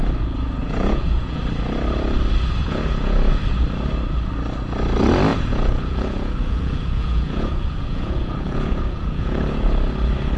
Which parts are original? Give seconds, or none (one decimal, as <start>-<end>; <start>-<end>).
0.0-0.6; 1.4-2.6; 3.3-5.3; 9.4-10.4